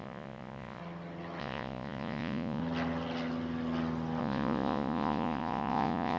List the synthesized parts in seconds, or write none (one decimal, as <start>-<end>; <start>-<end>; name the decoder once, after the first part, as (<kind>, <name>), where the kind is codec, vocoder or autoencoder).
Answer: 0.0-0.8 (vocoder, Vocos); 1.4-2.6; 4.2-6.2